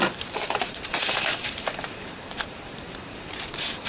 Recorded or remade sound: remade